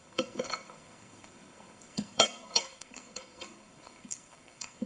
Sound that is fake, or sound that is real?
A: fake